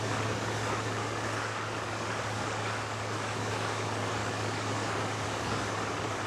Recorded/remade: remade